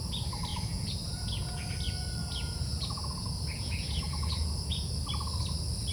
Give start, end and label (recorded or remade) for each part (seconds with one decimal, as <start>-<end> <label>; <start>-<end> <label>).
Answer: 0.0-0.5 recorded; 0.5-1.8 remade; 1.8-2.2 recorded; 2.2-4.9 remade; 4.9-5.9 recorded